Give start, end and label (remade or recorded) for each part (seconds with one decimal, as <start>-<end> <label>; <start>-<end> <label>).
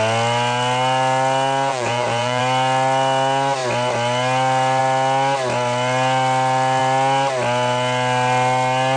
0.0-1.7 recorded; 1.7-2.4 remade; 2.4-9.0 recorded